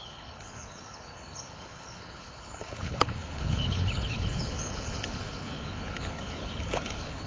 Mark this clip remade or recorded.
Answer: remade